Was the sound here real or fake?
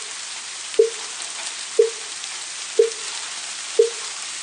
fake